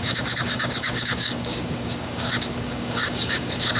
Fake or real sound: fake